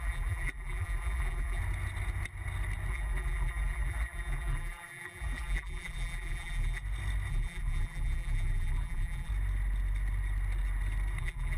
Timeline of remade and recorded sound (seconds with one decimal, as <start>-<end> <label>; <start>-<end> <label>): 0.0-1.6 remade; 1.6-2.9 recorded; 2.9-6.8 remade; 6.8-7.3 recorded; 7.3-9.3 remade; 9.3-11.2 recorded; 11.2-11.6 remade